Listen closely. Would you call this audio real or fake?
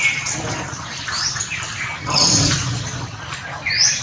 real